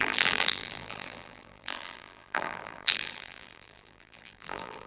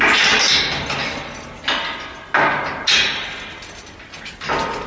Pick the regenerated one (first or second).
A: first